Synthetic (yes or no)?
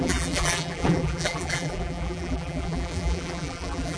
yes